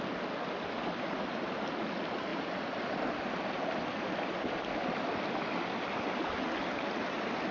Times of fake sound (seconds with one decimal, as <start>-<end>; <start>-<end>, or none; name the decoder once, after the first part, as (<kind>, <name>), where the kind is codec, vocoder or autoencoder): none